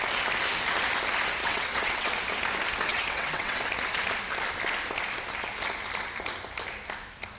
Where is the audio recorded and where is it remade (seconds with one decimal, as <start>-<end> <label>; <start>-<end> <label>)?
0.0-1.4 recorded; 1.4-2.1 remade; 2.1-2.9 recorded; 2.9-3.7 remade; 3.7-7.4 recorded